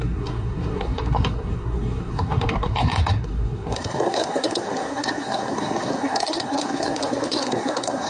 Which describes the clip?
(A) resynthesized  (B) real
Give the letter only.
A